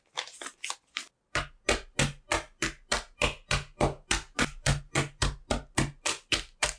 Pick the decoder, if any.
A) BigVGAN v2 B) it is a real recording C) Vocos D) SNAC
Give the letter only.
B